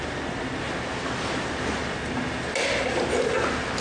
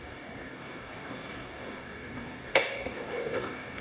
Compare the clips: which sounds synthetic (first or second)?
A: second